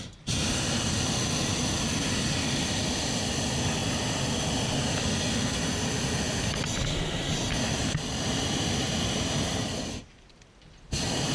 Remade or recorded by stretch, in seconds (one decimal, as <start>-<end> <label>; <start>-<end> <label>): 0.0-11.3 recorded